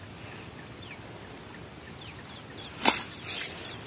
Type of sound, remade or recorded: recorded